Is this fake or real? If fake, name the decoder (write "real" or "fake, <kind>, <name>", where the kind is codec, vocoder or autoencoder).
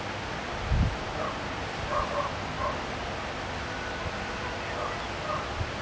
real